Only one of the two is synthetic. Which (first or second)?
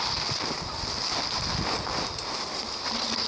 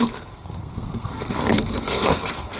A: second